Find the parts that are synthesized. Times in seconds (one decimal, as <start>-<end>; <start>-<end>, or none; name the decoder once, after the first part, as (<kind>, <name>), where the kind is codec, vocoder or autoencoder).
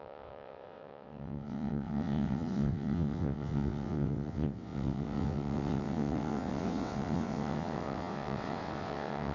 0.0-9.3 (vocoder, WaveNeXt)